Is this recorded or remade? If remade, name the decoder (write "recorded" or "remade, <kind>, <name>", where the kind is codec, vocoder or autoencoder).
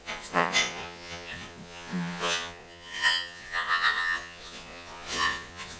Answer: remade, vocoder, Vocos